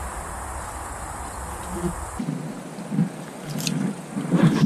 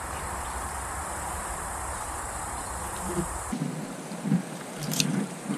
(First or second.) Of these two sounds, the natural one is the first